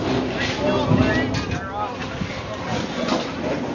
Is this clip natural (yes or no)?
yes